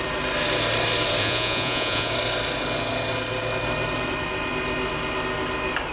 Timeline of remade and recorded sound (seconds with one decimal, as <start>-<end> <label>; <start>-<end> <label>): 0.0-1.2 recorded; 1.2-2.1 remade; 2.1-5.9 recorded